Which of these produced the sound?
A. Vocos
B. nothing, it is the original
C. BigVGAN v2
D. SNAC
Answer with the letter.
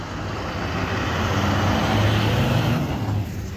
B